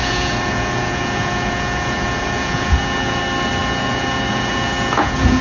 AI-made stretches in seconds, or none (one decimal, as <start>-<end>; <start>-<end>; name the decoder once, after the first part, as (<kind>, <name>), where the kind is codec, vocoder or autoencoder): 0.0-3.2 (vocoder, Vocos); 3.6-5.4